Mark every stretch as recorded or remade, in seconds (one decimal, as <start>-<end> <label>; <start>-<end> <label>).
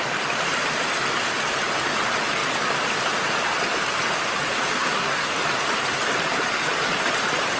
0.0-4.8 recorded; 4.8-5.3 remade; 5.3-7.6 recorded